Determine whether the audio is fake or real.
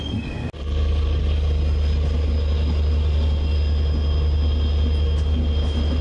real